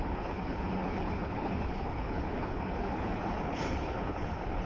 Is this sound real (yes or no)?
no